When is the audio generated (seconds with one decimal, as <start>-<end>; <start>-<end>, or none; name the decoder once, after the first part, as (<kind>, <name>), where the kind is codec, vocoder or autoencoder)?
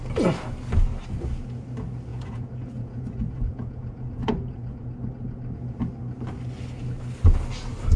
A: 2.1-5.1 (vocoder, Vocos)